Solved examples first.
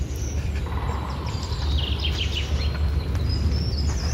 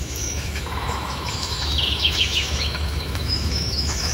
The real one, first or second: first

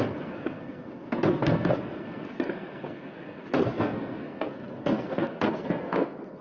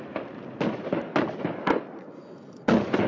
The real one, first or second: second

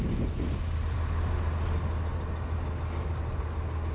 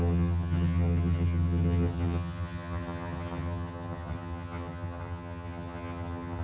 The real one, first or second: first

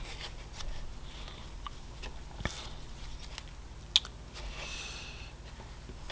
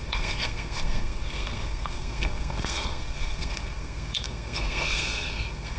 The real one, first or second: first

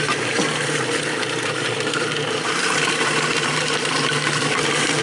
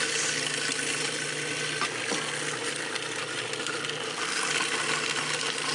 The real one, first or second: second